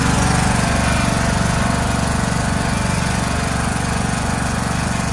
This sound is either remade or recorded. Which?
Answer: remade